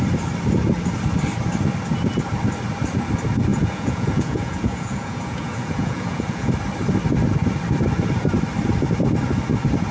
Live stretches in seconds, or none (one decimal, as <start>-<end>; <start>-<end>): 0.0-3.5; 6.5-9.9